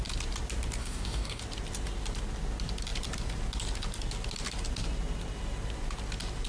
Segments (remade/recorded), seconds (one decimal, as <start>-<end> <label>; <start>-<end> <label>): 0.0-0.8 recorded; 0.8-1.4 remade; 1.4-6.5 recorded